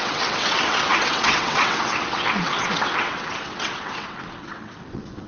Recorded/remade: remade